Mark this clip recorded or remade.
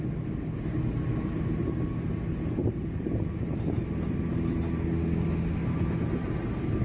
recorded